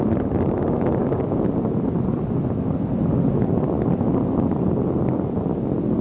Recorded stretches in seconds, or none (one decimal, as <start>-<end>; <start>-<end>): 0.0-6.0